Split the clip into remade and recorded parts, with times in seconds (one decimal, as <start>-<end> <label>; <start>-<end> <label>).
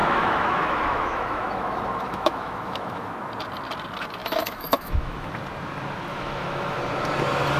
0.0-3.1 remade; 3.1-4.2 recorded; 4.2-5.3 remade; 5.3-6.1 recorded; 6.1-6.8 remade; 6.8-7.6 recorded